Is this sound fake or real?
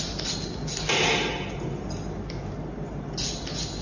real